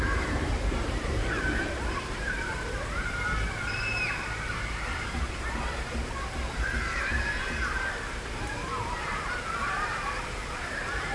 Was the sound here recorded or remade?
remade